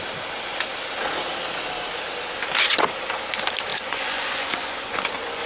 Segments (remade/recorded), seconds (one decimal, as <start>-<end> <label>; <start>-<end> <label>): 0.0-3.7 recorded; 3.7-5.5 remade